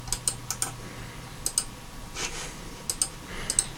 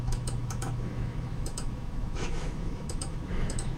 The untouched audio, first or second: first